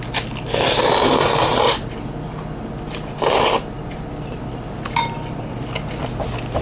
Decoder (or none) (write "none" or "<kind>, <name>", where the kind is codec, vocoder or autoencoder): none